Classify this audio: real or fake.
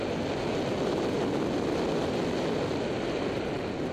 real